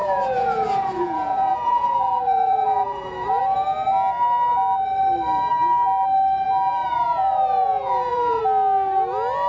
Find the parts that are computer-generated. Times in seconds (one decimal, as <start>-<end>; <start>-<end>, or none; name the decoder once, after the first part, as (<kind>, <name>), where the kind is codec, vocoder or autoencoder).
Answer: 0.0-3.4 (vocoder, Vocos); 6.8-8.4